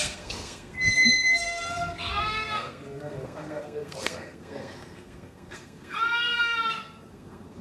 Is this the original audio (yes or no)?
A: no